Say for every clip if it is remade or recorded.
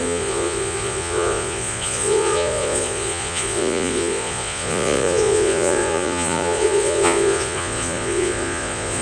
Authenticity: remade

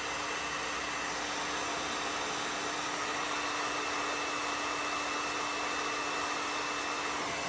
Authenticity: recorded